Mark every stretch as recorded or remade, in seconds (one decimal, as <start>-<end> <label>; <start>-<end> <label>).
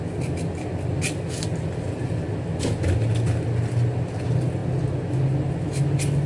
0.0-6.3 recorded